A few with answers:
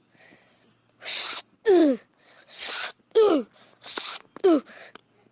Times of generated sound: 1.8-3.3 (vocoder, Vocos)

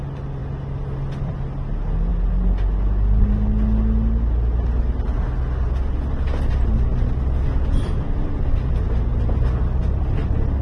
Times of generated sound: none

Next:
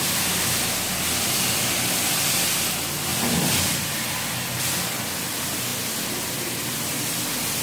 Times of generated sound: none

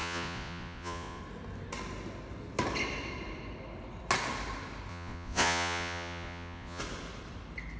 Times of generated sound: 0.0-1.2 (vocoder, Vocos); 4.9-6.8

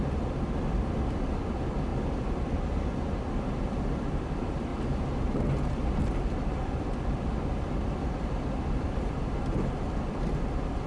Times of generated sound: 0.0-1.9 (vocoder, BigVGAN v2); 3.8-4.7; 6.0-10.9

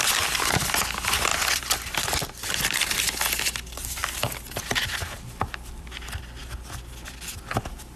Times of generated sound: 1.3-2.5 (vocoder, BigVGAN v2)

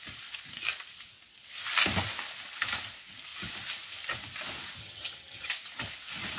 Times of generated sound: 4.8-5.5 (vocoder, HiFi-GAN)